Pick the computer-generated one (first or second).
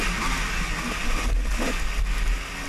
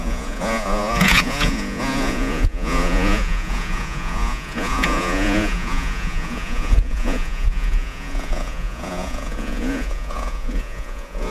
second